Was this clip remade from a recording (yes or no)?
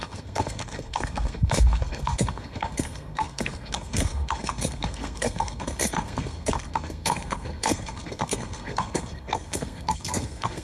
yes